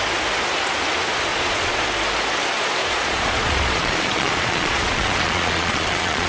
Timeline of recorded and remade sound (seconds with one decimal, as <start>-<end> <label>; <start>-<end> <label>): 0.0-1.3 recorded; 1.3-1.8 remade; 1.8-2.8 recorded; 2.8-6.3 remade